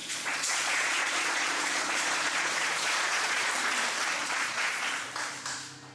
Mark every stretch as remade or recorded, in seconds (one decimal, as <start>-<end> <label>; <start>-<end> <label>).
0.0-3.5 remade; 3.5-4.2 recorded; 4.2-4.9 remade; 4.9-5.9 recorded